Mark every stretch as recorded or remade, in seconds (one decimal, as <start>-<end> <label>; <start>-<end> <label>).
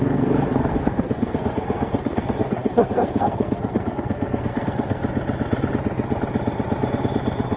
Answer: 0.0-5.0 remade; 5.0-7.6 recorded